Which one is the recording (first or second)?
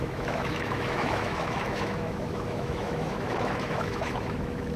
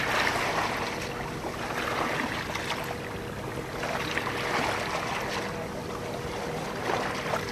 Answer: second